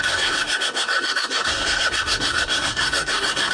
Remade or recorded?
remade